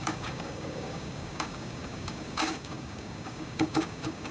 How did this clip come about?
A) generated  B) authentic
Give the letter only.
A